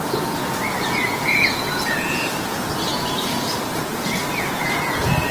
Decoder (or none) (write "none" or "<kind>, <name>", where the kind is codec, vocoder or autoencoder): vocoder, Vocos